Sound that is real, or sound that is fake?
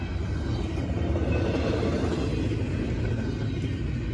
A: real